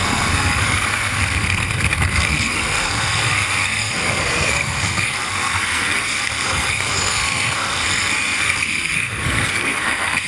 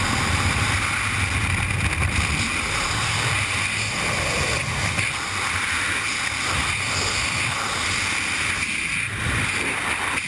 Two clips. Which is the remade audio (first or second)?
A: first